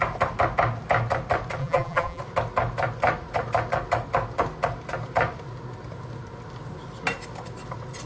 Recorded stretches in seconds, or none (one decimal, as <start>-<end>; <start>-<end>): 0.0-1.6; 2.2-8.1